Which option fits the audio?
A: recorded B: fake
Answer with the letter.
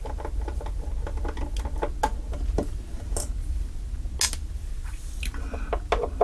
A